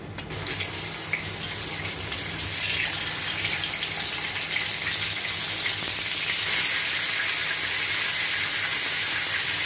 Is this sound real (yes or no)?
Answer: yes